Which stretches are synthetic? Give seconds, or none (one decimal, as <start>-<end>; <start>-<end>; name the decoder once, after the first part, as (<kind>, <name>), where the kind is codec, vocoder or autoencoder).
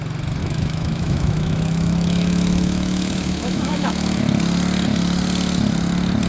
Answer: 0.4-4.2 (autoencoder, DAC-VAE)